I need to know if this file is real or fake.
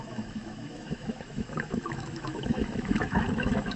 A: fake